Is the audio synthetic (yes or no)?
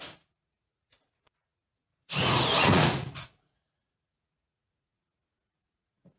yes